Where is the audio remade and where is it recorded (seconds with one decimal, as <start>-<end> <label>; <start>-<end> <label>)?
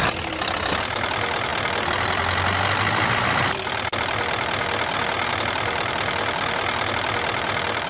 0.0-7.9 recorded